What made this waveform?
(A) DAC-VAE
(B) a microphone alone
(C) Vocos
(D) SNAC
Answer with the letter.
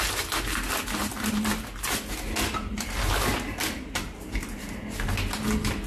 B